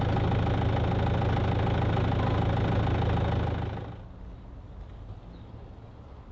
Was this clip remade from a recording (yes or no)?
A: no